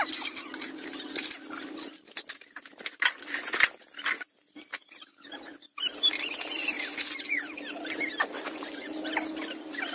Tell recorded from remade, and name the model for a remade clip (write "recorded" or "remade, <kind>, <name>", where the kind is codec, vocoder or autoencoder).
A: recorded